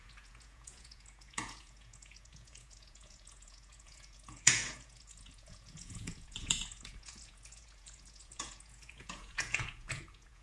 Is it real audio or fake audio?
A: fake